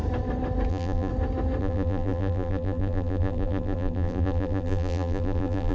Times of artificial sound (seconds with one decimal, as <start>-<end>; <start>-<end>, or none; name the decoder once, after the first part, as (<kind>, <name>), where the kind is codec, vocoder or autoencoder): 0.7-1.1 (vocoder, BigVGAN v2); 1.6-5.7